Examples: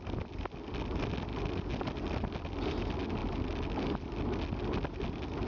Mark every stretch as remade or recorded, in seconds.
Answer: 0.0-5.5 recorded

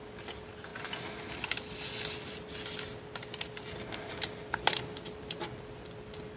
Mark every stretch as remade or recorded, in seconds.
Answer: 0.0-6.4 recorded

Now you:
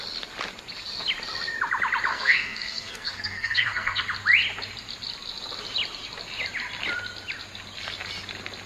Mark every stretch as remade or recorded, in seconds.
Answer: 0.0-2.1 recorded; 2.1-4.0 remade; 4.0-8.7 recorded

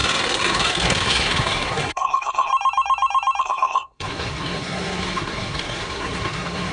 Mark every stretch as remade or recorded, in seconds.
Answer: 0.0-2.5 remade; 2.5-3.4 recorded; 3.4-6.7 remade